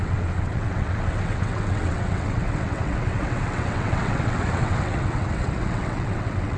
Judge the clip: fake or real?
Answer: fake